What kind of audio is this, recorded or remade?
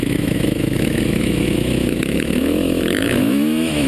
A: remade